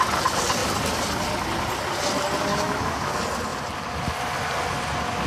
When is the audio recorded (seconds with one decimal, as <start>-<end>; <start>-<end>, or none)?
0.0-2.5; 3.1-5.3